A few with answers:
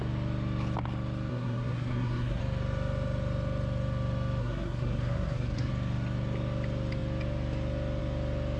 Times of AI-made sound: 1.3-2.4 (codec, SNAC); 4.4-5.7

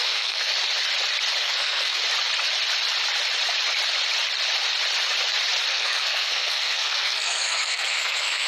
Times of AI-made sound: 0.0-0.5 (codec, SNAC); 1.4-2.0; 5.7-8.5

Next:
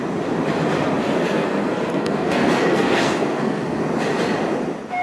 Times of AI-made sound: 1.0-3.8 (codec, SNAC)

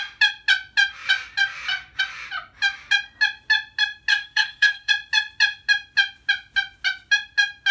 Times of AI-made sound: 4.1-4.9 (codec, SNAC)